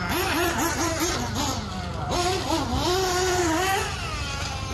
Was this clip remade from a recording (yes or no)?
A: no